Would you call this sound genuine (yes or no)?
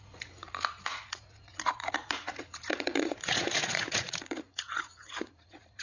no